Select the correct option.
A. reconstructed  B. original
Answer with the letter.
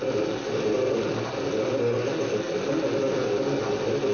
B